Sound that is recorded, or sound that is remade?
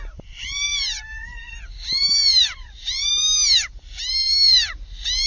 recorded